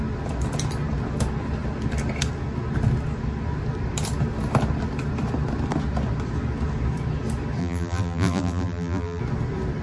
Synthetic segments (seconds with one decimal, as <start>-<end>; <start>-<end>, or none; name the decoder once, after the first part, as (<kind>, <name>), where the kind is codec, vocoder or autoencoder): 7.6-9.2 (vocoder, BigVGAN v2)